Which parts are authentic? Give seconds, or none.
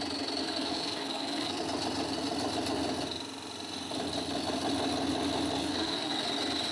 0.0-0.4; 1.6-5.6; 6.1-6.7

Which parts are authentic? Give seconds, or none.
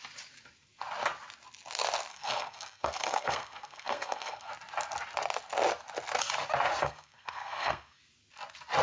0.0-2.1; 4.5-6.8; 8.0-8.8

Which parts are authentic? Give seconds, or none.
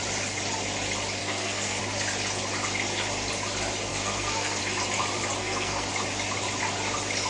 0.0-1.2; 1.8-3.9; 4.6-5.4; 5.9-7.3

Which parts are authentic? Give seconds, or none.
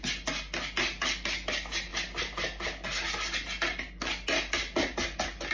0.0-5.5